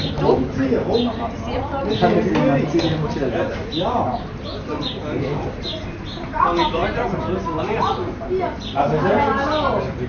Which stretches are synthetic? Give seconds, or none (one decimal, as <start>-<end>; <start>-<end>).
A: none